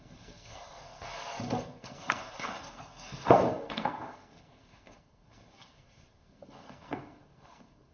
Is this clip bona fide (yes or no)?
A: no